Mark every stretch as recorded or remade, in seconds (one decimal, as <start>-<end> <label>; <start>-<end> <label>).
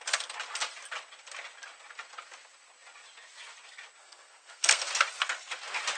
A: 0.0-4.0 recorded; 4.0-4.9 remade; 4.9-6.0 recorded